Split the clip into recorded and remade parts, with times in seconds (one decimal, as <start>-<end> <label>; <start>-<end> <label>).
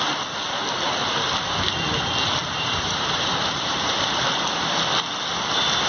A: 0.0-1.0 recorded; 1.0-1.6 remade; 1.6-2.4 recorded; 2.4-4.7 remade; 4.7-5.9 recorded